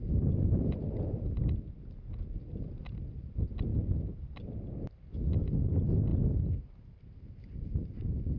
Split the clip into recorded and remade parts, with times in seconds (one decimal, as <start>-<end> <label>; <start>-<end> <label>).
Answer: 0.0-8.4 recorded